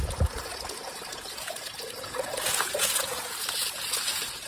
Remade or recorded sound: remade